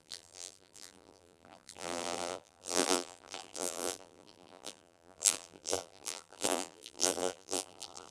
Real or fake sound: fake